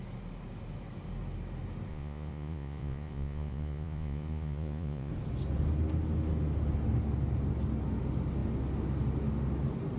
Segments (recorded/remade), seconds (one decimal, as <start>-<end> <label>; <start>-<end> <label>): 0.0-1.9 recorded; 1.9-5.1 remade; 5.1-10.0 recorded